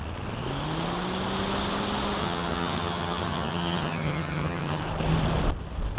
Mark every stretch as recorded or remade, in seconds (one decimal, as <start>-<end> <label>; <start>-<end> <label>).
0.0-2.2 recorded; 2.2-4.8 remade; 4.8-6.0 recorded